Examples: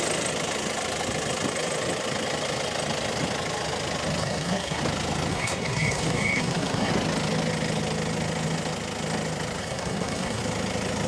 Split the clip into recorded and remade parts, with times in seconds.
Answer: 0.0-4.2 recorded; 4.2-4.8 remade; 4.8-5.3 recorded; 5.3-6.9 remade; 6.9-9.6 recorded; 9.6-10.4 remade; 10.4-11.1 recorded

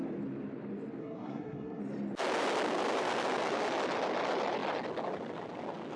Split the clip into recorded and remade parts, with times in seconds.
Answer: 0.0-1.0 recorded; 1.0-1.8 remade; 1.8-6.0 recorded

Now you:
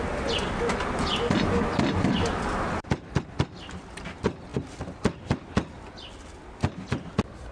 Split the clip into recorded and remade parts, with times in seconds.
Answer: 0.0-7.5 recorded

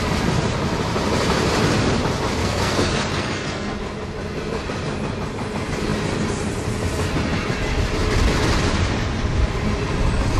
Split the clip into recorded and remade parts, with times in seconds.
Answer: 0.0-2.4 recorded; 2.4-3.8 remade; 3.8-10.4 recorded

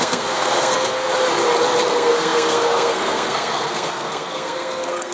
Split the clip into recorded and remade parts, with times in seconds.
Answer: 0.0-1.1 remade; 1.1-1.9 recorded; 1.9-5.1 remade

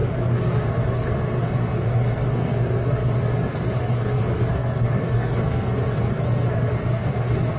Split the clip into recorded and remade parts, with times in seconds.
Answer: 0.0-3.1 remade; 3.1-3.5 recorded; 3.5-7.6 remade